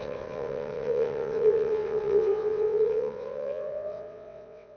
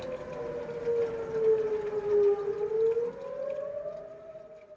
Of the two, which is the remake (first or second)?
first